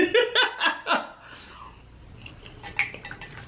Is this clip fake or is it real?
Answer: real